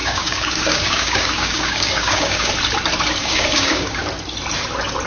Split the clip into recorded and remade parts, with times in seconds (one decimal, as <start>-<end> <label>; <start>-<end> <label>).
0.0-2.5 remade; 2.5-3.2 recorded; 3.2-4.0 remade; 4.0-5.1 recorded